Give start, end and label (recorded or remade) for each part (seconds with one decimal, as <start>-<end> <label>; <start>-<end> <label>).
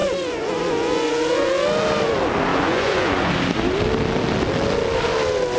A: 0.0-1.5 remade; 1.5-2.5 recorded; 2.5-3.3 remade; 3.3-5.6 recorded